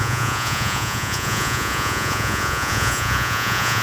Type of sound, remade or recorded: remade